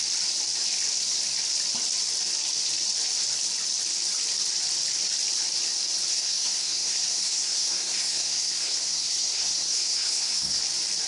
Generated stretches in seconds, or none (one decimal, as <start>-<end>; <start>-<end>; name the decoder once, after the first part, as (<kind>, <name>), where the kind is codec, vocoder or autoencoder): 6.1-10.6 (codec, SNAC)